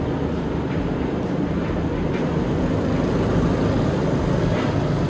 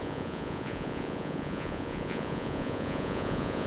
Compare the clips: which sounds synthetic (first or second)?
second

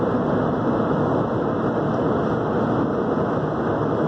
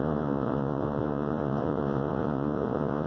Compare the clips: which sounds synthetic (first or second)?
second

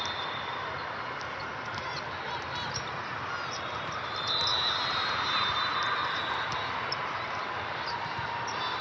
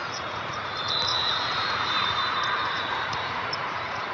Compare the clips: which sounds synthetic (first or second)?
second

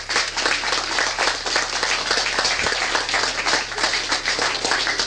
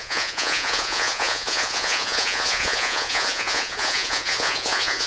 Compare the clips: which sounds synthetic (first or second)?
second